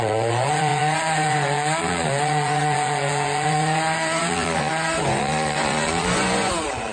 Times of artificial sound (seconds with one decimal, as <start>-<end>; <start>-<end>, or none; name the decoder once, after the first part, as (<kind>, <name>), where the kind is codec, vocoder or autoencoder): 0.0-6.9 (vocoder, Vocos)